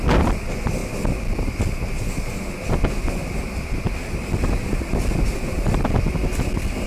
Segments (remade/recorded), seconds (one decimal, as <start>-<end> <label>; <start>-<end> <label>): 0.0-6.9 recorded